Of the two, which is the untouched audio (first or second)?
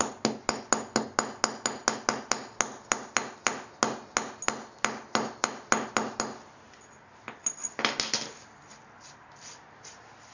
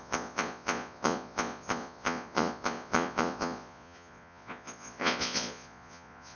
first